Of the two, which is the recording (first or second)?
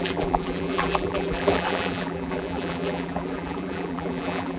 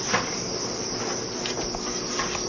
second